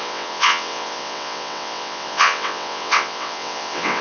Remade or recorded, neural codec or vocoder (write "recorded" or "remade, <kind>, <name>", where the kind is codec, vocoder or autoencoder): remade, vocoder, WaveNeXt